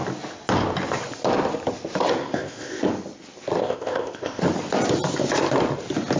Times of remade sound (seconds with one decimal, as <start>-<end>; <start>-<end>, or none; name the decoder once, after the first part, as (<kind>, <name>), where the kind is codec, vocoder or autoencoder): 2.2-2.8 (codec, ZipCodec); 3.6-4.4